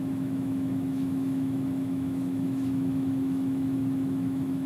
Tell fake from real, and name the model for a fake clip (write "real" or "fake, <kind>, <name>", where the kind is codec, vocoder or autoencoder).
fake, autoencoder, DAC-VAE